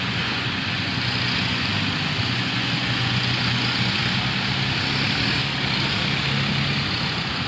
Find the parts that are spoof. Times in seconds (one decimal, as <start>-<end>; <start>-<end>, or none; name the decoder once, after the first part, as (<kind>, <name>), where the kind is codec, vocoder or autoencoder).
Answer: 0.0-1.7 (vocoder, Vocos); 2.2-4.0; 6.9-7.5